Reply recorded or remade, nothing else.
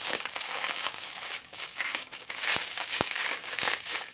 remade